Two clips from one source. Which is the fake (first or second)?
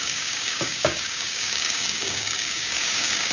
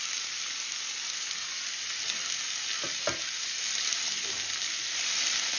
first